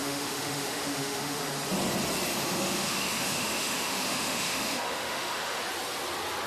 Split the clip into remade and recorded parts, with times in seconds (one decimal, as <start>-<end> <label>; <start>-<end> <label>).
0.0-1.4 remade; 1.4-2.3 recorded; 2.3-5.6 remade; 5.6-6.5 recorded